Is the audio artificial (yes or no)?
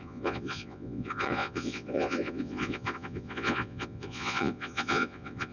yes